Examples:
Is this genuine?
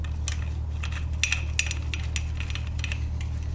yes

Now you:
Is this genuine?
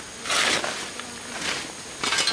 yes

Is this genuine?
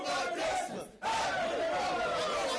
yes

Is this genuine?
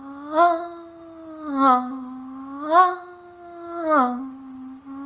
yes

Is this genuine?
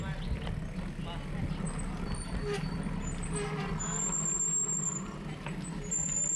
yes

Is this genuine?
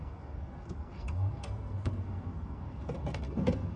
no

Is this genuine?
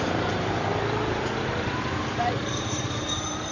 no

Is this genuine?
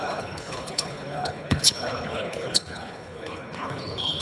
no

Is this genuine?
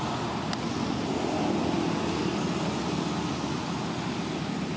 yes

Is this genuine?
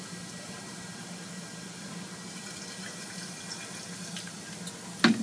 yes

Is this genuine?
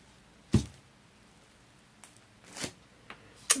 yes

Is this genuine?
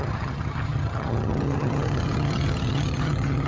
no